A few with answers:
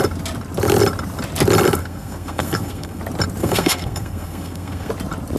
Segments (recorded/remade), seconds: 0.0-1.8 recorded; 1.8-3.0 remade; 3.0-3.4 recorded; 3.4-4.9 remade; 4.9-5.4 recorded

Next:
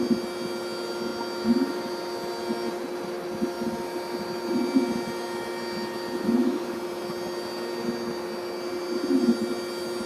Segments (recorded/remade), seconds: 0.0-10.1 recorded

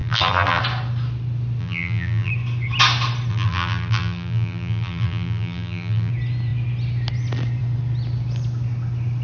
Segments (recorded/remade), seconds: 0.0-0.6 remade; 0.6-1.6 recorded; 1.6-2.3 remade; 2.3-3.3 recorded; 3.3-6.1 remade; 6.1-9.2 recorded

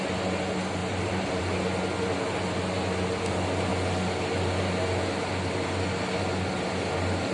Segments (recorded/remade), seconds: 0.0-0.8 recorded; 0.8-1.4 remade; 1.4-7.3 recorded

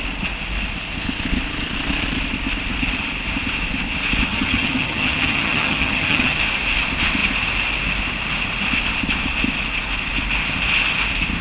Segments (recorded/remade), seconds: 0.0-4.3 recorded; 4.3-6.4 remade; 6.4-11.4 recorded

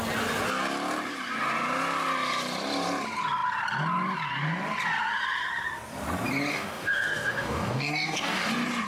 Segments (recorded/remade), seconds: 0.0-6.5 recorded; 6.5-8.5 remade; 8.5-8.9 recorded

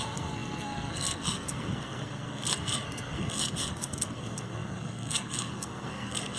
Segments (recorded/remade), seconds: 0.0-6.4 remade